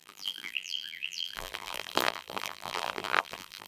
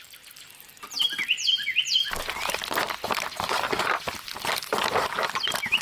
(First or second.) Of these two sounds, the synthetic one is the first